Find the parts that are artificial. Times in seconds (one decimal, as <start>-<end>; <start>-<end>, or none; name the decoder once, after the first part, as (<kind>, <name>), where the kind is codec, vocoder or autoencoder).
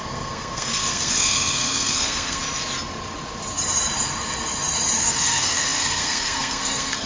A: 0.0-2.4 (codec, SNAC); 5.0-7.1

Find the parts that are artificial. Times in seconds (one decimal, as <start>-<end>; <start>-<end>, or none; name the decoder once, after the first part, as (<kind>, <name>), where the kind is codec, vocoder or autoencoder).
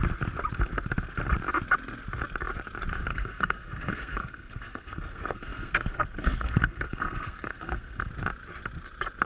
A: 3.1-8.1 (codec, SNAC)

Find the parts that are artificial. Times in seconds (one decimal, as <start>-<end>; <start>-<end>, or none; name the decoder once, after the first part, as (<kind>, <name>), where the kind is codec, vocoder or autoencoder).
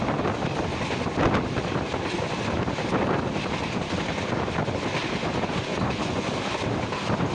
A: 5.7-6.3 (vocoder, Vocos)